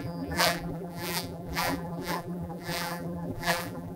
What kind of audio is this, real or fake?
fake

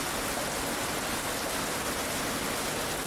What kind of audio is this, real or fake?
real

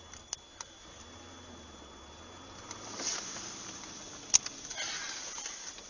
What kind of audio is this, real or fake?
real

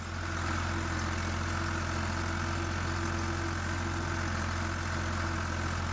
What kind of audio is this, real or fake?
real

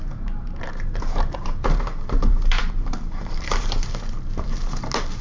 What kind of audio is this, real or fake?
fake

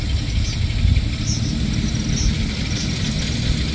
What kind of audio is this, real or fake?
real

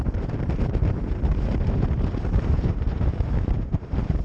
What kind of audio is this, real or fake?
fake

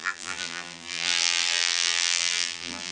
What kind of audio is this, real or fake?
fake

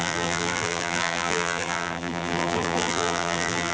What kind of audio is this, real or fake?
fake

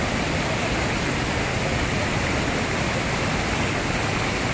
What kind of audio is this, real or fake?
real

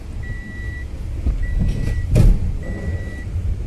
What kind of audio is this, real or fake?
real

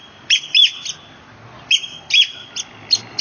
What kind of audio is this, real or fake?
real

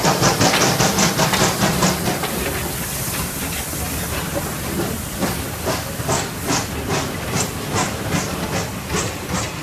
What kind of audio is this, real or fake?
real